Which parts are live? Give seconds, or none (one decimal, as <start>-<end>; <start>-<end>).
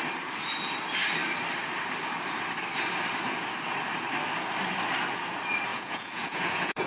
0.0-5.7